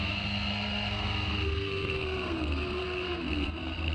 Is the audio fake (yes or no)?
yes